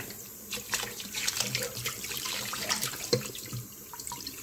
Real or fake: fake